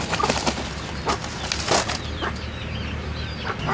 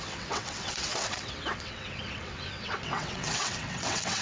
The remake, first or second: second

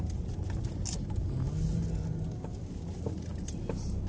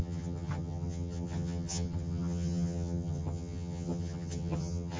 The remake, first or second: second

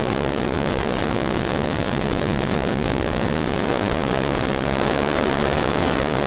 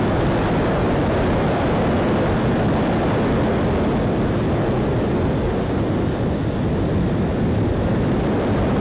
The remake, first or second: first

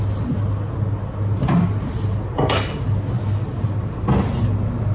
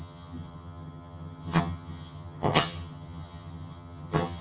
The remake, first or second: second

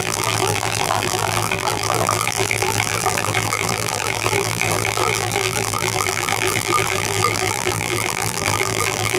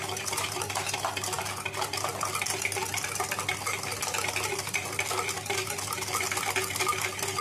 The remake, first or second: first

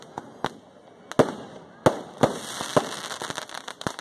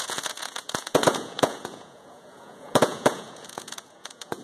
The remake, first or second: second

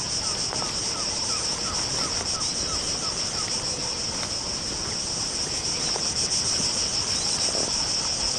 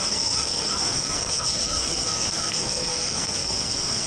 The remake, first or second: second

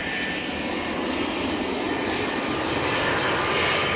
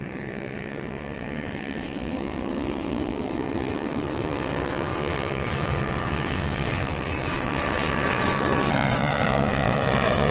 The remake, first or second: second